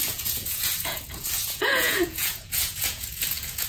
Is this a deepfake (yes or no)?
yes